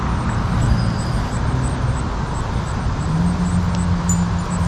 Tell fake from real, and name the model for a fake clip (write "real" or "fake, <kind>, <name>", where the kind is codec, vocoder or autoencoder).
real